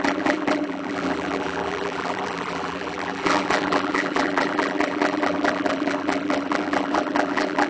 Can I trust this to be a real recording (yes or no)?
no